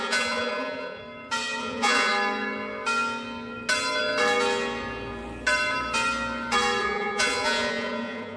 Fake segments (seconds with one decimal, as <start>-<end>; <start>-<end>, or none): 0.0-1.0; 1.6-2.1; 6.8-8.4